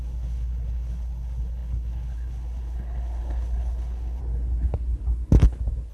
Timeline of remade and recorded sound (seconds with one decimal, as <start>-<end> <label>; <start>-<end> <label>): 0.0-4.2 remade; 4.2-5.9 recorded